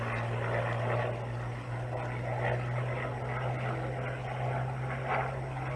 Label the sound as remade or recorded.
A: recorded